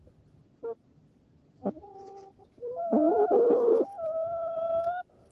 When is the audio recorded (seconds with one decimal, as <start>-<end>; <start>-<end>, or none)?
0.0-1.6; 2.1-5.3